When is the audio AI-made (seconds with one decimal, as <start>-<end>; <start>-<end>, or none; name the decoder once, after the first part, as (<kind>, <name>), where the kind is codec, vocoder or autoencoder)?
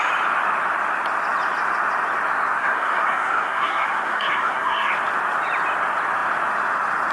2.6-4.9 (codec, SNAC)